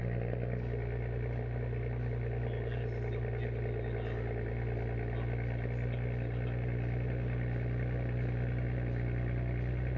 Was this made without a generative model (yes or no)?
yes